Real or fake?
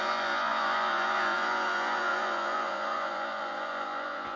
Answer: fake